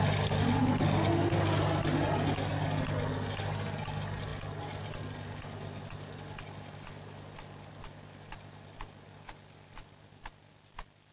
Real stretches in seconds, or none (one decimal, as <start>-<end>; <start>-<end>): 0.0-11.1